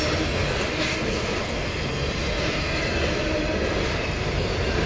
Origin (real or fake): real